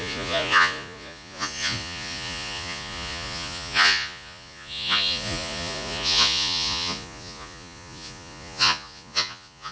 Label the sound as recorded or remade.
remade